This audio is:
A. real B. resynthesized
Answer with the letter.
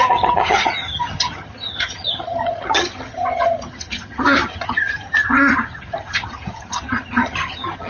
B